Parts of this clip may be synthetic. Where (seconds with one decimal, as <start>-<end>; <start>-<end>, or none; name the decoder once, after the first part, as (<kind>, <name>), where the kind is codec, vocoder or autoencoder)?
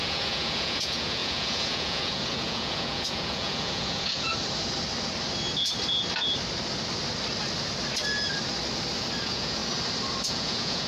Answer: 0.0-4.3 (vocoder, Vocos); 9.2-9.6; 10.3-10.9